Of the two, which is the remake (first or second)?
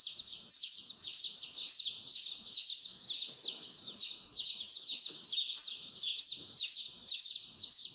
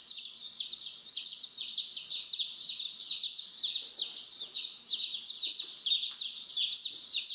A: first